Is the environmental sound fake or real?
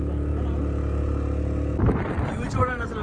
real